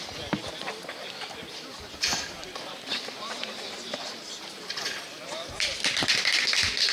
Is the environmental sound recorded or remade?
remade